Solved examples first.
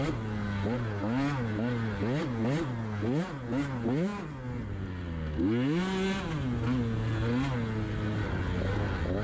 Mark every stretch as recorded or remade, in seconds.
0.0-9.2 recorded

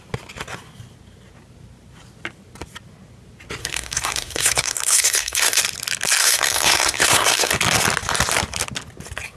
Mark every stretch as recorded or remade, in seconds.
0.0-3.6 recorded; 3.6-5.6 remade; 5.6-6.2 recorded; 6.2-7.5 remade; 7.5-9.4 recorded

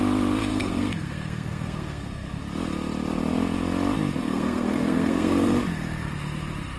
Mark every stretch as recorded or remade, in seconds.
0.0-0.5 recorded; 0.5-2.4 remade; 2.4-4.2 recorded; 4.2-5.6 remade; 5.6-6.8 recorded